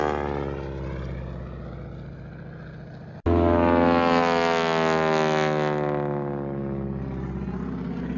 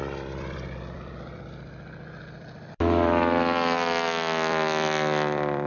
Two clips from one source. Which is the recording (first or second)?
first